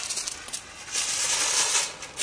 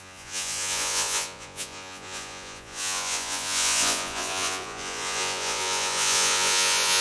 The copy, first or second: second